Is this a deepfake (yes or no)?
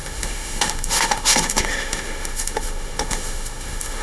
yes